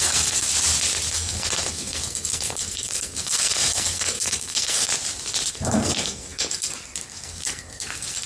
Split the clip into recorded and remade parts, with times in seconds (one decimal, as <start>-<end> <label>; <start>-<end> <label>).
0.0-0.5 remade; 0.5-1.1 recorded; 1.1-4.9 remade; 4.9-5.5 recorded; 5.5-8.3 remade